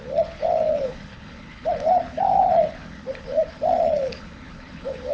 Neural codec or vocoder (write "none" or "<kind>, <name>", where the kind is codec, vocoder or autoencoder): codec, HILCodec